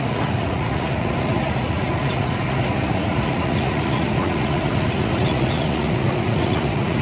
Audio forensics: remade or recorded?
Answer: remade